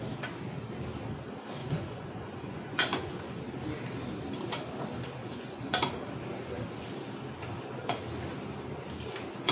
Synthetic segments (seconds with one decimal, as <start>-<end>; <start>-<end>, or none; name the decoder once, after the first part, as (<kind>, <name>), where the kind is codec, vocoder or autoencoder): 1.6-3.2 (vocoder, Vocos); 5.2-5.9